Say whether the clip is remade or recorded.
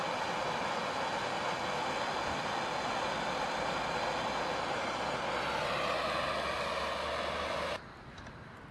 recorded